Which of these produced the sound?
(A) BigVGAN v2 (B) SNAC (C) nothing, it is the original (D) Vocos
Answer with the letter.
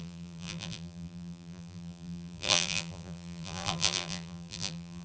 A